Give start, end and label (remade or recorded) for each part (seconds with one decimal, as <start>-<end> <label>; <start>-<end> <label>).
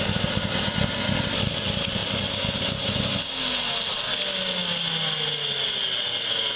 0.0-6.6 recorded